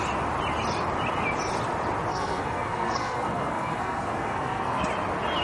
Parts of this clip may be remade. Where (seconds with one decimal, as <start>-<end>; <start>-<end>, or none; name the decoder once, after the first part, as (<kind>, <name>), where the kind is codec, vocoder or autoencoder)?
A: 2.1-4.8 (codec, SNAC)